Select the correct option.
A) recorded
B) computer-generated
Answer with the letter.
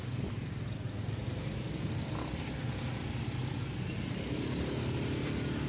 A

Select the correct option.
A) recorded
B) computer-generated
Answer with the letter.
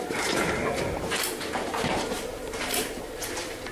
B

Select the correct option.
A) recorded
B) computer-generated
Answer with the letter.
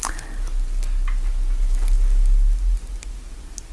A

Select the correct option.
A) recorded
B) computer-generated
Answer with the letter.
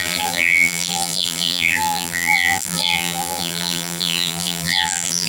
B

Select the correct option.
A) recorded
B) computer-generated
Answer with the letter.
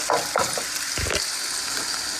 A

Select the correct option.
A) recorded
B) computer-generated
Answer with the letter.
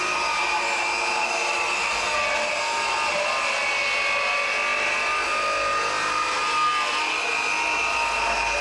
A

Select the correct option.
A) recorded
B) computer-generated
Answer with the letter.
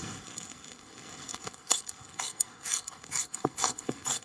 B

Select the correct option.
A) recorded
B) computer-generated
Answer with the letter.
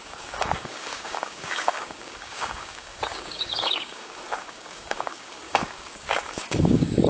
B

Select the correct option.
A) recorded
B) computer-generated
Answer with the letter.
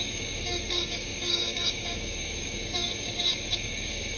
B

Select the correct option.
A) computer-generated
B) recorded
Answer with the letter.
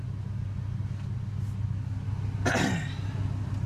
B